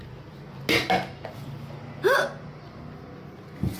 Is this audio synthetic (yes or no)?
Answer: no